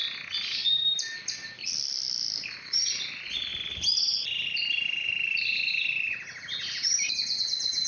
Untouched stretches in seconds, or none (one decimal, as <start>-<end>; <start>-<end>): 0.0-0.6; 3.1-3.5; 7.4-7.9